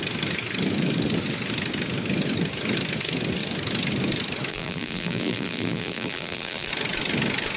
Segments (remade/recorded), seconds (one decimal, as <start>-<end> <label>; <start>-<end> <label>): 0.0-4.5 recorded; 4.5-6.7 remade; 6.7-7.6 recorded